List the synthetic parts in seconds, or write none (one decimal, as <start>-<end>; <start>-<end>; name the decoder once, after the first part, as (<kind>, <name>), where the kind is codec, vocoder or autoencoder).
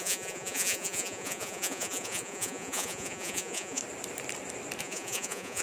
0.0-3.8 (vocoder, Vocos); 4.8-5.6